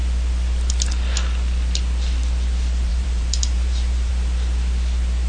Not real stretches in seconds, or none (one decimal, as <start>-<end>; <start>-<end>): 2.9-4.1